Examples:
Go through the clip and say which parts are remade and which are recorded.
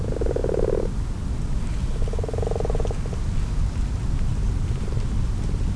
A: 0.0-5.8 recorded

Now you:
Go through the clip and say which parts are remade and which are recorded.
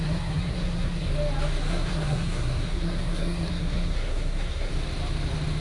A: 0.0-1.1 remade; 1.1-1.7 recorded; 1.7-4.7 remade; 4.7-5.6 recorded